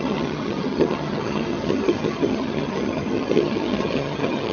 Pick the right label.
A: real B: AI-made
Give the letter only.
B